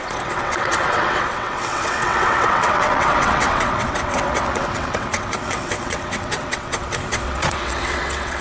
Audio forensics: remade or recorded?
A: remade